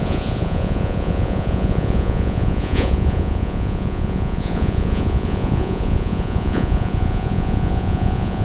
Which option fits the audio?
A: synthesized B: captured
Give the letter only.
A